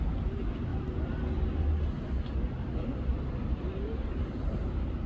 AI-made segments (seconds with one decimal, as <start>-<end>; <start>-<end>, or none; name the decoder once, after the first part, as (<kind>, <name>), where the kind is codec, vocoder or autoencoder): 0.0-0.7 (vocoder, BigVGAN v2); 3.6-5.1